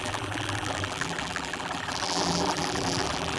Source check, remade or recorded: remade